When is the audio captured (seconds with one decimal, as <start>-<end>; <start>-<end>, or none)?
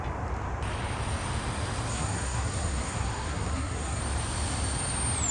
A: 0.0-1.9; 4.0-5.3